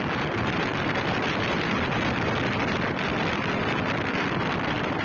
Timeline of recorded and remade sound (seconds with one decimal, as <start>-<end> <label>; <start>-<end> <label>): 0.0-5.0 recorded